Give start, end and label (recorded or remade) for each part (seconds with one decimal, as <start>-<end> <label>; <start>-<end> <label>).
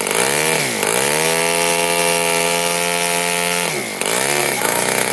0.0-4.4 recorded; 4.4-5.1 remade